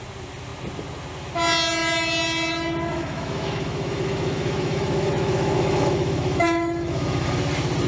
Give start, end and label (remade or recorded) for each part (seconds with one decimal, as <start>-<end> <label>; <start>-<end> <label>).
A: 0.0-2.9 recorded; 2.9-7.4 remade; 7.4-7.9 recorded